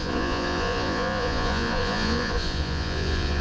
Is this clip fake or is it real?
fake